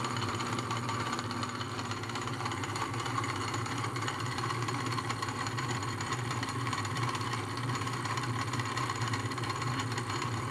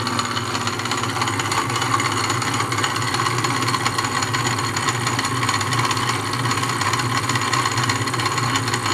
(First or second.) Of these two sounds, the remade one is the first